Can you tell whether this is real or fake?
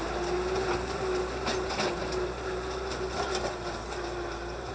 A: real